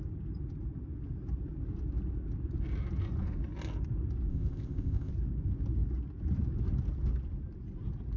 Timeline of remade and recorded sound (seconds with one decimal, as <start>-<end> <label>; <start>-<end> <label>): 0.0-4.3 recorded; 4.3-5.1 remade; 5.1-8.2 recorded